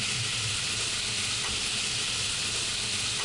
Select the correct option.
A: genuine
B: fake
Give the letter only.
A